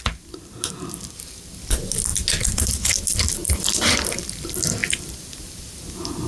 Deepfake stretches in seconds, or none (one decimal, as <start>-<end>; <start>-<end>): 3.4-4.2